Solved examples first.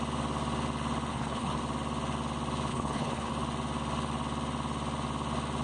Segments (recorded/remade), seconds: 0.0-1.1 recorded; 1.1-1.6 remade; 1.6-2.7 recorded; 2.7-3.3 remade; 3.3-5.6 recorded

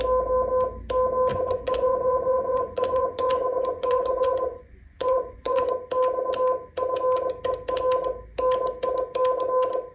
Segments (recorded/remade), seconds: 0.0-1.3 recorded; 1.3-5.7 remade; 5.7-9.9 recorded

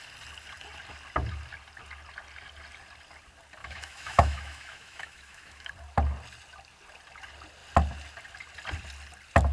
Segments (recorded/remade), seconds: 0.0-3.6 recorded; 3.6-5.7 remade; 5.7-9.5 recorded

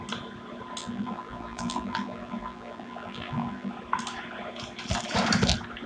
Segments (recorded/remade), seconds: 0.0-0.8 recorded; 0.8-3.7 remade; 3.7-5.9 recorded

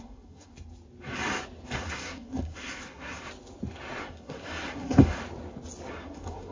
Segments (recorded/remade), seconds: 0.0-0.5 remade; 0.5-1.8 recorded; 1.8-3.2 remade; 3.2-4.0 recorded; 4.0-5.2 remade; 5.2-5.9 recorded; 5.9-6.5 remade

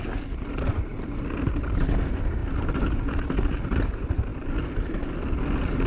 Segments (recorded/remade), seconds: 0.0-5.9 recorded

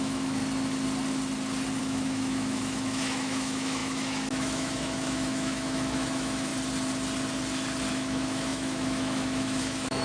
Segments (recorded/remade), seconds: 0.0-0.4 remade; 0.4-1.8 recorded; 1.8-6.5 remade; 6.5-7.9 recorded; 7.9-10.0 remade